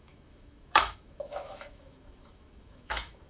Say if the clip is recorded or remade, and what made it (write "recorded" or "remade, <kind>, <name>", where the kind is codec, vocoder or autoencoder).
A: remade, autoencoder, DAC-VAE